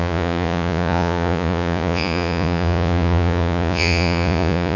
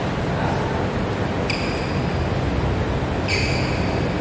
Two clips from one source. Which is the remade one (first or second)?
first